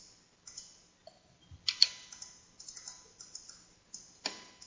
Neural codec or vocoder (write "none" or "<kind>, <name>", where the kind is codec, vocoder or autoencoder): none